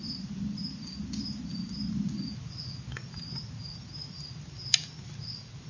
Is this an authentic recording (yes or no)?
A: yes